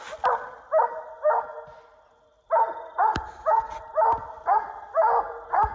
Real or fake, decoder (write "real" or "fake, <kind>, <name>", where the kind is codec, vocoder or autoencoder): real